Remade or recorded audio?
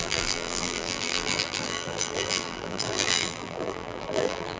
remade